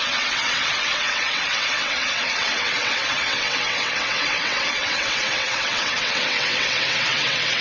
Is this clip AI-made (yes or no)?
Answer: yes